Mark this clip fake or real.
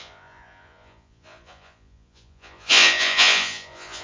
fake